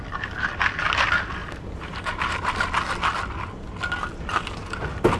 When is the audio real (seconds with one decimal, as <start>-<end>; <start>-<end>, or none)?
0.0-1.4; 2.3-5.2